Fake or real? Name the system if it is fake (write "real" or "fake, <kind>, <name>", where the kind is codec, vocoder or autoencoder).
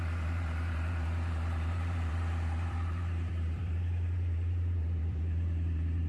fake, vocoder, BigVGAN v2